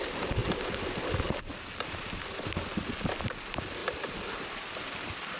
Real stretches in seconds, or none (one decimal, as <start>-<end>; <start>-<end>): 0.4-1.2